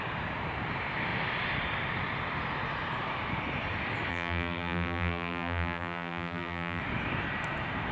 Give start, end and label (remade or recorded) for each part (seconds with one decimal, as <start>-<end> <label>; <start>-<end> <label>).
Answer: 0.0-4.1 recorded; 4.1-6.8 remade; 6.8-7.9 recorded